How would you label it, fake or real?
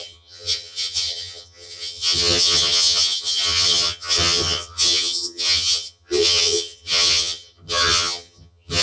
fake